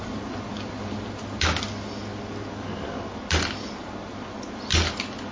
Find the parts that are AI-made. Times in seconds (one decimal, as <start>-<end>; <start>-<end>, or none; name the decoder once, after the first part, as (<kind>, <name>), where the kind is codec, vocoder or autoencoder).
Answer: none